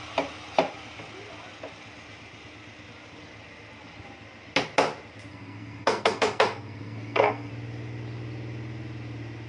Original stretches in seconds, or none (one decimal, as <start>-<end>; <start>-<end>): 0.0-5.3; 7.5-9.5